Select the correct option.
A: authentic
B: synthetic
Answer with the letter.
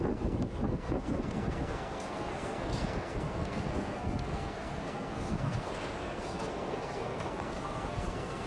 B